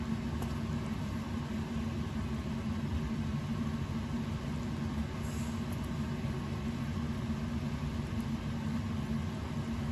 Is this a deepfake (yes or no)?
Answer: no